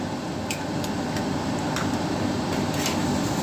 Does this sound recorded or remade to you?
recorded